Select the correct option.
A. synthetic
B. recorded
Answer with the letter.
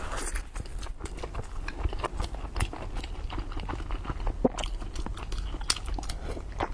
B